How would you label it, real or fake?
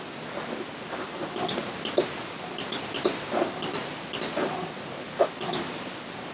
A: real